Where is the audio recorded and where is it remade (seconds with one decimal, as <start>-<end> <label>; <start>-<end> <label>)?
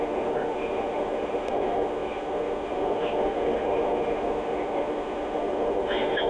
0.0-6.3 remade